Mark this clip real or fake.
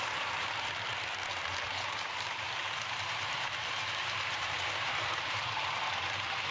fake